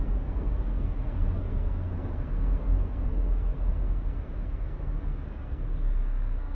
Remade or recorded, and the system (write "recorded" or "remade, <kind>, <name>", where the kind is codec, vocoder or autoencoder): remade, codec, SNAC